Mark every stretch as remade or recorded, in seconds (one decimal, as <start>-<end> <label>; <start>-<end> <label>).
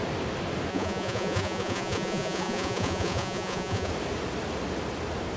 0.0-0.7 recorded; 0.7-3.9 remade; 3.9-5.4 recorded